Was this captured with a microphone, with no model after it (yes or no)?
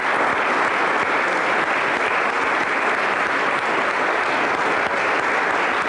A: yes